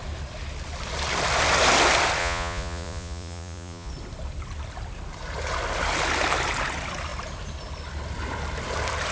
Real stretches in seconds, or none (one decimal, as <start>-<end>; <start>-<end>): 0.0-2.2; 3.9-9.1